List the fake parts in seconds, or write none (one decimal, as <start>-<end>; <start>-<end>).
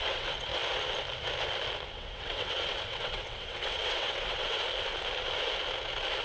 0.0-0.5; 1.9-4.6